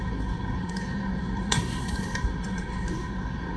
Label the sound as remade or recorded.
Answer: remade